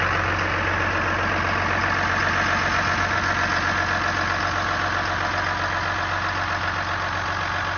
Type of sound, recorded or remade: recorded